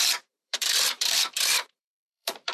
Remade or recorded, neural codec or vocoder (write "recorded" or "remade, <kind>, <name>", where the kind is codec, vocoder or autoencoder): remade, vocoder, BigVGAN v2